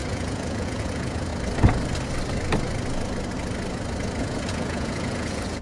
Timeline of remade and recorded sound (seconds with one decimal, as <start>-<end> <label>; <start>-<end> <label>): 0.0-1.3 remade; 1.3-4.2 recorded; 4.2-5.6 remade